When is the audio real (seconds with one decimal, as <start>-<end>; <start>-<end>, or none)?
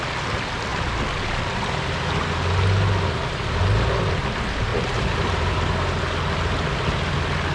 0.0-4.7; 6.7-7.5